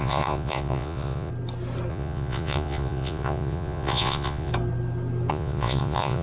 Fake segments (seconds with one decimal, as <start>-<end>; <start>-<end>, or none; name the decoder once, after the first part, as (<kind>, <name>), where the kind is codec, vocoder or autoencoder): 0.0-1.3 (vocoder, Vocos); 1.9-4.5; 5.3-6.2